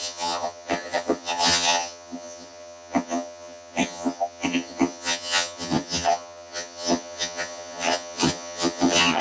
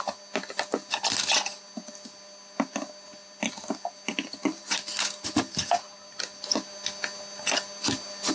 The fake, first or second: first